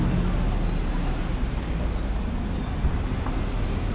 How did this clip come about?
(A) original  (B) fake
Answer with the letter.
A